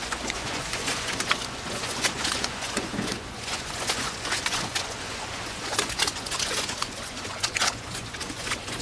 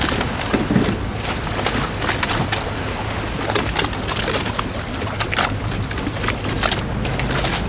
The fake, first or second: first